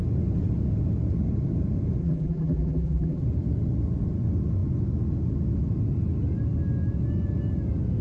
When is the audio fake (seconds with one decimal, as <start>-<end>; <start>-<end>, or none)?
2.0-3.2